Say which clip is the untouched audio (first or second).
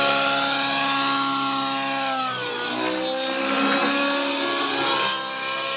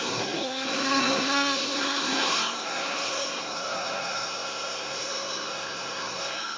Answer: first